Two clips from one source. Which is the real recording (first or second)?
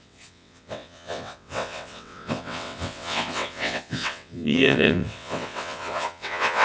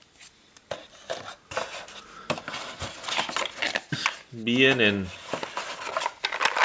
second